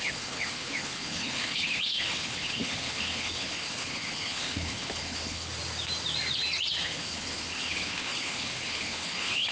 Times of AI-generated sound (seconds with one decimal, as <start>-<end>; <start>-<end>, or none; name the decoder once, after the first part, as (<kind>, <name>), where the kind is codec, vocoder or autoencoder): 0.0-5.5 (codec, HILCodec); 6.8-9.5